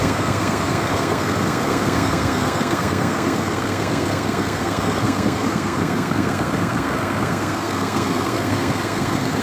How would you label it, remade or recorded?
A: remade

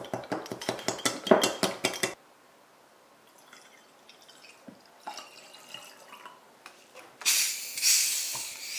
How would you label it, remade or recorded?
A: recorded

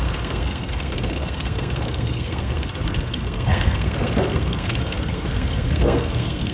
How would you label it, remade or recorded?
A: remade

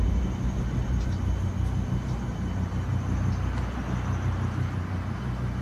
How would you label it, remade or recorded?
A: recorded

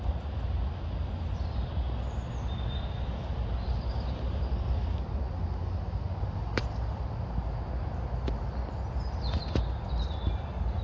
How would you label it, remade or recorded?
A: recorded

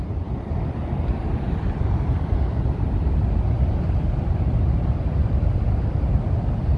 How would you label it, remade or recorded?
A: recorded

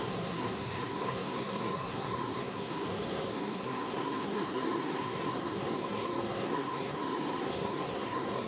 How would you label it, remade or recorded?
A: remade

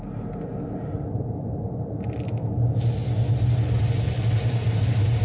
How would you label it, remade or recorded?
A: recorded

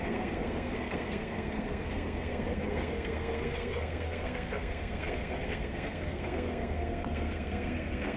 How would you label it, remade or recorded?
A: remade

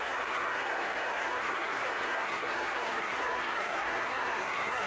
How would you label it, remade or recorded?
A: remade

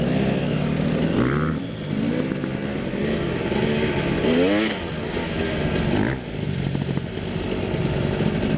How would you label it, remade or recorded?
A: recorded